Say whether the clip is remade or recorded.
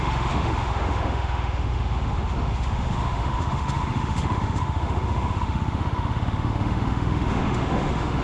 remade